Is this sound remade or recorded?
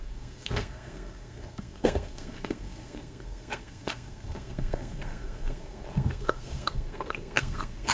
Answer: remade